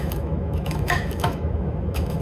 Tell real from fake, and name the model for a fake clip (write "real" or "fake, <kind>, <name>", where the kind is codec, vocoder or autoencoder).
fake, autoencoder, DAC-VAE